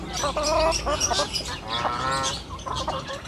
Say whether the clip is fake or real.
real